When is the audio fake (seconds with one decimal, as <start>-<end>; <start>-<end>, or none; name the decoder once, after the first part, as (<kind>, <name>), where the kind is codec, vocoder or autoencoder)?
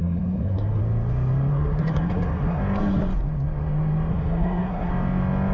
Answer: 0.0-0.8 (codec, SNAC); 1.5-2.6; 4.1-4.9